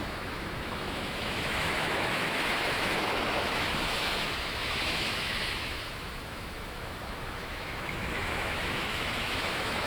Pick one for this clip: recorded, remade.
remade